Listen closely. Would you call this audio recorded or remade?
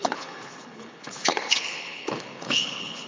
remade